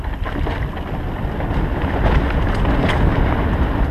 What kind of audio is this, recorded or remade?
recorded